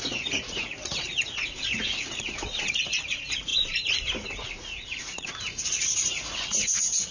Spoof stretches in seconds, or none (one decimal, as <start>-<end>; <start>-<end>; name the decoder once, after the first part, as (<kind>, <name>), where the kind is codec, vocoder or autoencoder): 0.0-3.5 (vocoder, Vocos); 4.1-7.1